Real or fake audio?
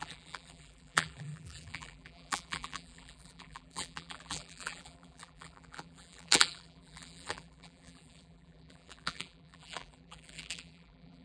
fake